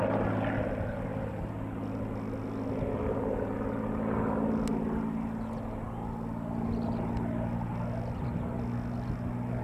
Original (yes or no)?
yes